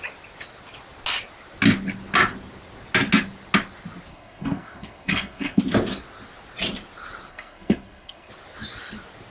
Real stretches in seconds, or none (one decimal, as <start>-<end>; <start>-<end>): 0.0-4.1; 5.6-7.3; 8.3-9.3